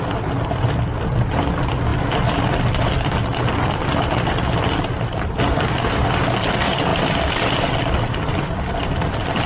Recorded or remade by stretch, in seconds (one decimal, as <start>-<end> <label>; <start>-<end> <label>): 0.0-9.5 recorded